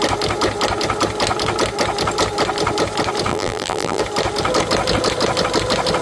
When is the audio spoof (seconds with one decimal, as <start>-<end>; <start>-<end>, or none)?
3.3-4.0